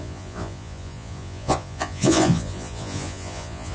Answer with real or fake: fake